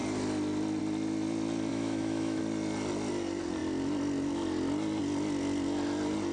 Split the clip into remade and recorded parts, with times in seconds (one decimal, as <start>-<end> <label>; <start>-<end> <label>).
0.0-1.7 recorded; 1.7-2.4 remade; 2.4-6.3 recorded